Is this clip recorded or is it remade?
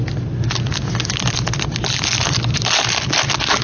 recorded